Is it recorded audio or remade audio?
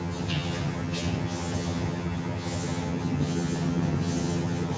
remade